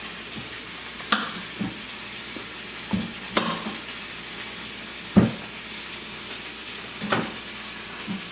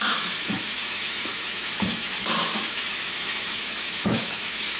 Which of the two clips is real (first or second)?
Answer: first